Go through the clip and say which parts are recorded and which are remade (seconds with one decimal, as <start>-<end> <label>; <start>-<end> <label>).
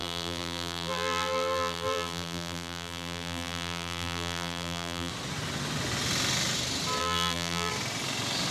0.0-5.1 remade; 5.1-7.0 recorded; 7.0-7.7 remade; 7.7-8.5 recorded